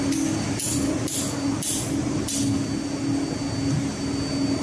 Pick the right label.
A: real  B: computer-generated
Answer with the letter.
A